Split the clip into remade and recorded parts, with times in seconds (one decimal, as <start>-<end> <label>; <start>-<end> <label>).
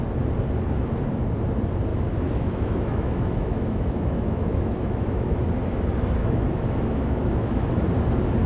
0.0-1.9 recorded; 1.9-5.4 remade; 5.4-6.2 recorded; 6.2-7.7 remade; 7.7-8.5 recorded